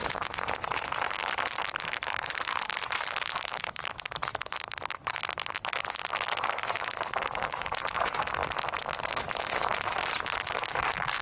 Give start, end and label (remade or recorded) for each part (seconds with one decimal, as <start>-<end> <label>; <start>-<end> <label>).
0.0-4.3 remade; 4.3-6.1 recorded; 6.1-8.4 remade; 8.4-9.2 recorded; 9.2-11.2 remade